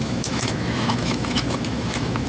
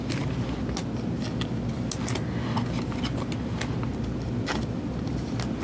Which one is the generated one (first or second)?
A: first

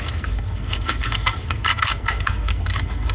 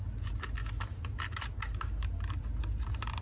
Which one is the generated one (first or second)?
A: first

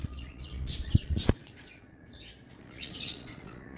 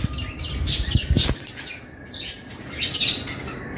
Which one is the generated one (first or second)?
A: first